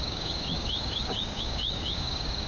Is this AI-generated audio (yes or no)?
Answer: yes